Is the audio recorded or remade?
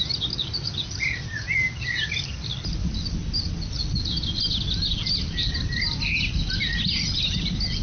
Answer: recorded